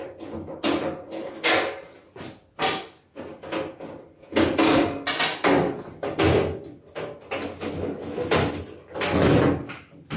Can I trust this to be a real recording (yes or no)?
yes